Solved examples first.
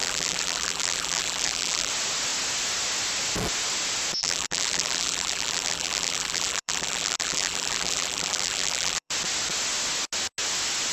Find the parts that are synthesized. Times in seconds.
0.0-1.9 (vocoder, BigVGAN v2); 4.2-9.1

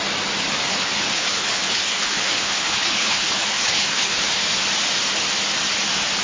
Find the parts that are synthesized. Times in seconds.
0.7-4.2 (codec, HILCodec)

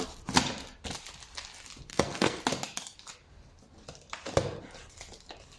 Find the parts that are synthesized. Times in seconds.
1.9-2.4 (codec, SNAC)

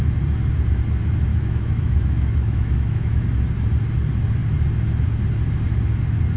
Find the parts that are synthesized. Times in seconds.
1.3-3.2 (autoencoder, DAC-VAE)